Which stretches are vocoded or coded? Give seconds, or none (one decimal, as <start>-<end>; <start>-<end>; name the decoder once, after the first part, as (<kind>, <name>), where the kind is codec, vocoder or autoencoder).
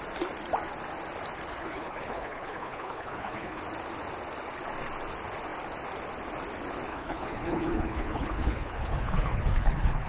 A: 1.5-3.6 (codec, HILCodec); 6.9-10.1